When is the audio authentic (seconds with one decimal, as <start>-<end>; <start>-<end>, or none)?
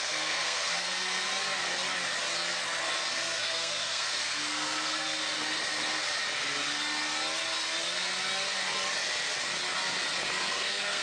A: 1.3-3.1; 5.2-10.5